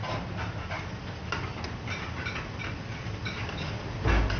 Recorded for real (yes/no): yes